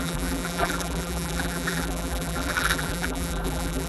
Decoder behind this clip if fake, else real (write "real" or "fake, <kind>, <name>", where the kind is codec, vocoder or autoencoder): fake, vocoder, BigVGAN v2